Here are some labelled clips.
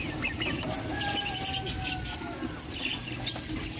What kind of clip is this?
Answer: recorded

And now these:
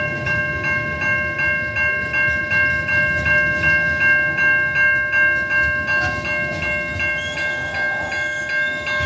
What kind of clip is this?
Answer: recorded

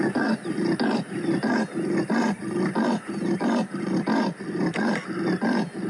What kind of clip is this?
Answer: recorded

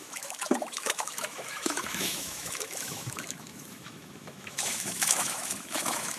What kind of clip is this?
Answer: remade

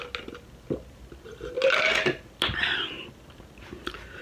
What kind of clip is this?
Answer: recorded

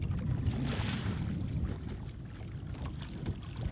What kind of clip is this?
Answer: recorded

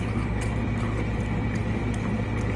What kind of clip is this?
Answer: recorded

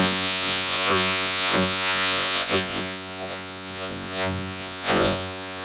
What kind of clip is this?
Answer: remade